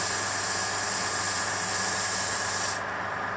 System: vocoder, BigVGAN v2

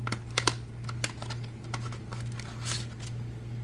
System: none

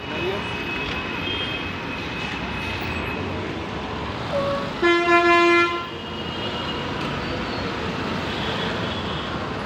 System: none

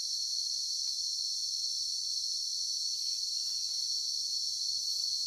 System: none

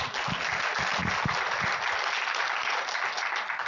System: none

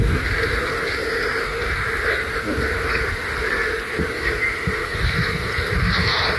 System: none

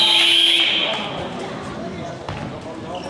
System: none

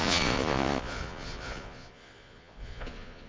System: vocoder, Vocos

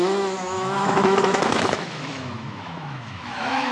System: autoencoder, DAC-VAE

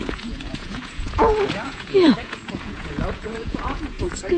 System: vocoder, Vocos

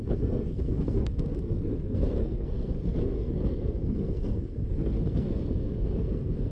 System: codec, SNAC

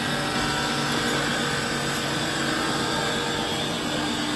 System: none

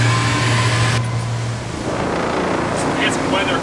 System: none